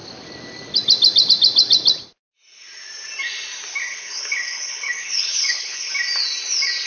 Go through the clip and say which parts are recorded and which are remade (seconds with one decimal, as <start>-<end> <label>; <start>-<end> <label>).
0.0-3.8 recorded; 3.8-5.9 remade; 5.9-6.9 recorded